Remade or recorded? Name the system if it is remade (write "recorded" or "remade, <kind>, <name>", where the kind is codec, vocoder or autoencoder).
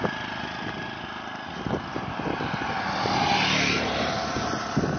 recorded